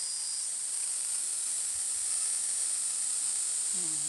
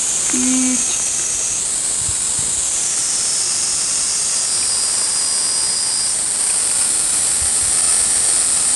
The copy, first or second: first